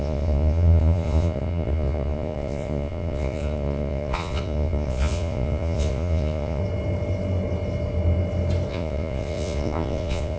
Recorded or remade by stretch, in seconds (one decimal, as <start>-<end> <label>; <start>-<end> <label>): 0.0-6.6 remade; 6.6-8.7 recorded; 8.7-10.4 remade